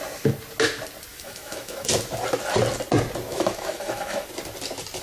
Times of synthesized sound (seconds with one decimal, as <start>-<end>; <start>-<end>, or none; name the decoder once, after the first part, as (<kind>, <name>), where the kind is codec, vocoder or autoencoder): 1.1-1.9 (autoencoder, DAC-VAE); 3.3-4.3